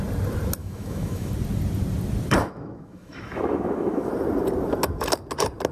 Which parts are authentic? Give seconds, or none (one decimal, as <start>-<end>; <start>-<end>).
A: 0.0-0.6; 1.3-2.4; 4.1-5.7